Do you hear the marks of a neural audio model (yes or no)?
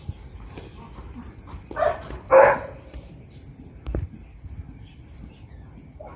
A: no